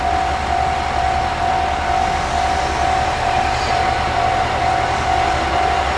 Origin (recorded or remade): recorded